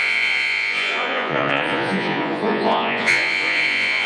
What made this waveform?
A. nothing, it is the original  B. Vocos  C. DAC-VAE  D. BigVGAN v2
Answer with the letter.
B